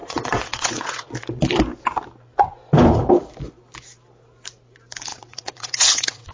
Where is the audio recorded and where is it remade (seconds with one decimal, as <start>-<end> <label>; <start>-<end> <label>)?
0.0-1.1 remade; 1.1-5.1 recorded; 5.1-6.3 remade